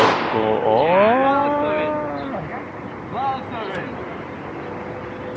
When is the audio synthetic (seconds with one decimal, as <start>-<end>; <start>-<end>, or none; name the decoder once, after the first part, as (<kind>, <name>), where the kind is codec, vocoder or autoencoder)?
none